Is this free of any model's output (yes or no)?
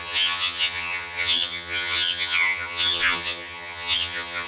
no